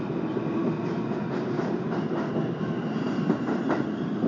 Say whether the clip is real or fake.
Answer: real